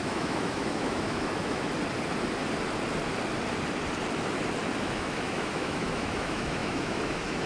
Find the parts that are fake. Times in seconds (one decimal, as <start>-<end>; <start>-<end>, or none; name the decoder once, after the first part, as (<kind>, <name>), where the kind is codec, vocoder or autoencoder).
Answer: 0.0-1.7 (autoencoder, DAC-VAE); 4.8-7.5